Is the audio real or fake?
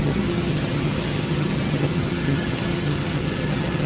fake